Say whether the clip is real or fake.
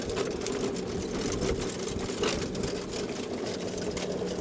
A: real